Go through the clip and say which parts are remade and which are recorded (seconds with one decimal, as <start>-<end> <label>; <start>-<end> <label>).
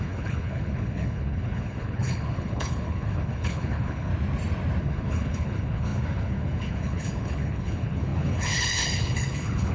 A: 0.0-4.1 remade; 4.1-4.8 recorded; 4.8-9.7 remade